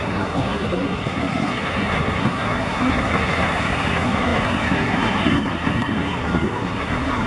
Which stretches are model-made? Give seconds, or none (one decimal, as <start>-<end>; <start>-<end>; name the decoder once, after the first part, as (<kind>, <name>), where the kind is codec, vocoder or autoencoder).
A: 0.0-7.3 (codec, SNAC)